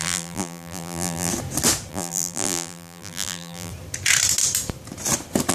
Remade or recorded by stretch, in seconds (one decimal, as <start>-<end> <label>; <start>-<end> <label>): 0.0-1.3 remade; 1.3-1.9 recorded; 1.9-3.7 remade; 3.7-5.5 recorded